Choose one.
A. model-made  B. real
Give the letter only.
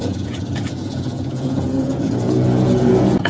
A